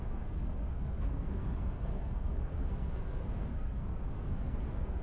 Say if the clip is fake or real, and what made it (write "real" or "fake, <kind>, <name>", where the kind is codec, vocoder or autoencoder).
fake, codec, SNAC